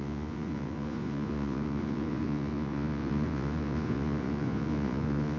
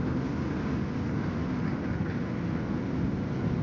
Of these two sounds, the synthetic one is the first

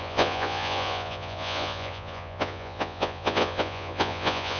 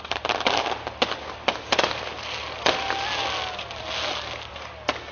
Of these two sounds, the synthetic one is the first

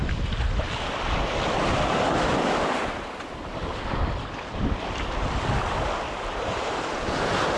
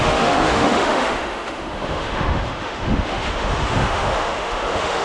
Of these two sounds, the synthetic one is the second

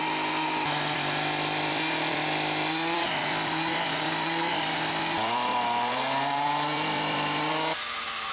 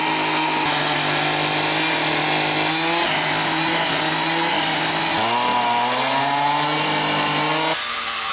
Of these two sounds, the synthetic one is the first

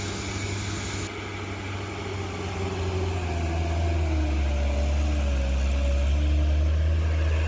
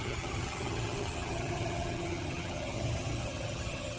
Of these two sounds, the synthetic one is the second